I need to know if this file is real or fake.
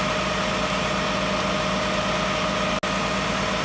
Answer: real